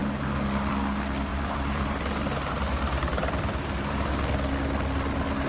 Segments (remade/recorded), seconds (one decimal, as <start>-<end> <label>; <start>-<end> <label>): 0.0-1.3 recorded; 1.3-4.1 remade; 4.1-5.5 recorded